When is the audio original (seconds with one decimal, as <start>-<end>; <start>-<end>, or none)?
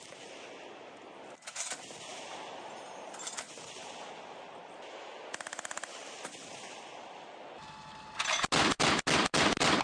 0.0-9.8